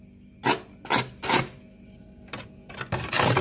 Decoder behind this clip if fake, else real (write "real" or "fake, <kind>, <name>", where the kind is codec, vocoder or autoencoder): real